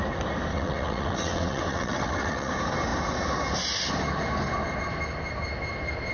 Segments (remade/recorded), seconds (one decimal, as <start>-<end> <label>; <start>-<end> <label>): 0.0-0.5 recorded; 0.5-2.5 remade; 2.5-6.1 recorded